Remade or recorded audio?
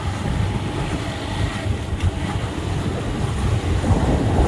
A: recorded